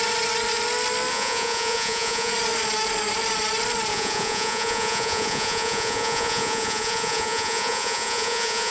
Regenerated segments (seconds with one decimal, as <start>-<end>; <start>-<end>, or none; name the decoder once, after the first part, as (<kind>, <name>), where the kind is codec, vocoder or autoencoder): 1.1-2.3 (vocoder, Vocos); 3.9-8.7